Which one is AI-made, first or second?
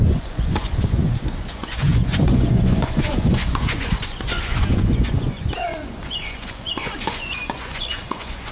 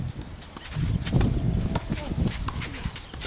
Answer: first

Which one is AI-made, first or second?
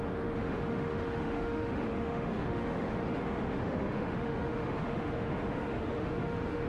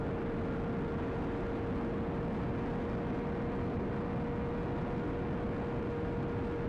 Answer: first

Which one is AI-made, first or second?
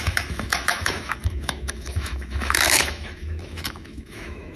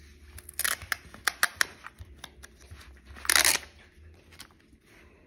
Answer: first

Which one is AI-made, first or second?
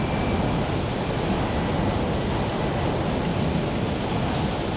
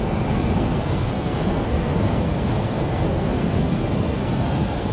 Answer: second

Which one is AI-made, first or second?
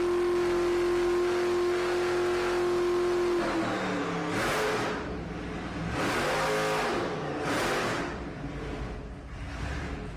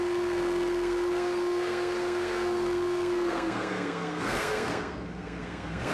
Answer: second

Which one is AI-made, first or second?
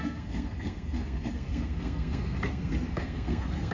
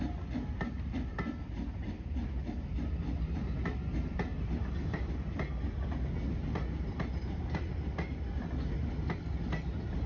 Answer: first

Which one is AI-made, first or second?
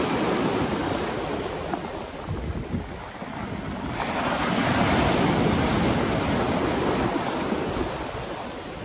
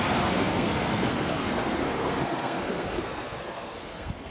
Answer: second